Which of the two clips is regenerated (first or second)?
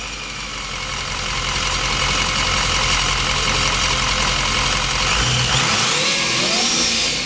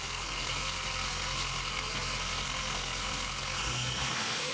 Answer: second